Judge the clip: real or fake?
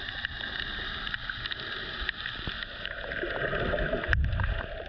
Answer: real